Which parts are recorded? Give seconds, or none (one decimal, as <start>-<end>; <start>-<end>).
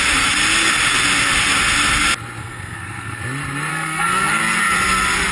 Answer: 0.0-2.4; 3.2-3.7; 4.4-5.3